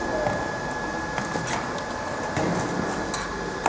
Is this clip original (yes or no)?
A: yes